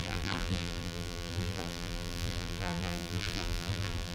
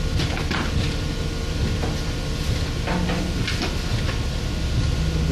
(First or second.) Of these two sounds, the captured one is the second